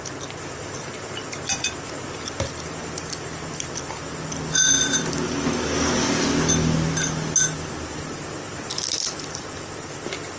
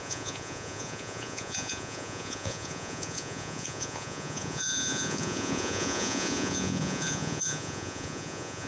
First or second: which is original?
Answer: first